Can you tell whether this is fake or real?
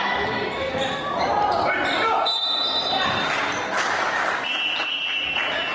real